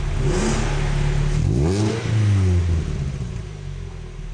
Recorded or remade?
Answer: recorded